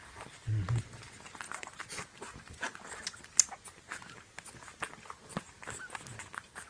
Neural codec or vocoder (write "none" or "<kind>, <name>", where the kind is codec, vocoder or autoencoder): none